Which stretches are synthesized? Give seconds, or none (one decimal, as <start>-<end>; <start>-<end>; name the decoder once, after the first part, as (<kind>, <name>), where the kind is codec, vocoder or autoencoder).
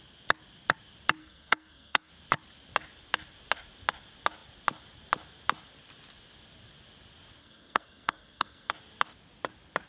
1.2-2.1 (codec, SNAC); 7.4-8.7